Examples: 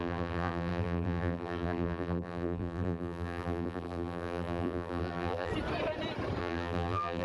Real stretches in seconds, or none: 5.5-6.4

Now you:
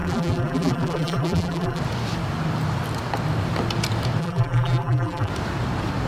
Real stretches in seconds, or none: 1.8-4.2; 5.3-6.1

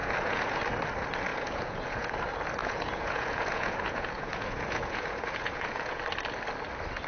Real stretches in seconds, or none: 0.6-1.3; 2.2-2.6; 6.0-7.1

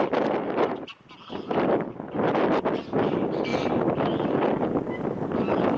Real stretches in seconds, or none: 0.0-5.8

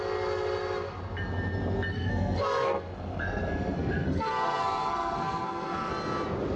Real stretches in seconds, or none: 0.0-1.9; 5.9-6.6

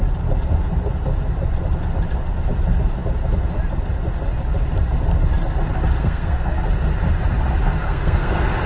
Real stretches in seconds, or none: 0.0-6.0; 6.5-7.8

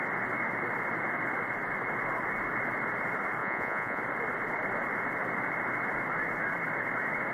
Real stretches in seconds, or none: 0.0-3.4; 4.0-7.3